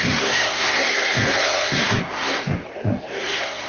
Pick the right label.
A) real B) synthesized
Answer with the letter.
B